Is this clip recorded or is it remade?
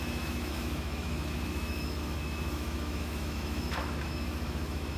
remade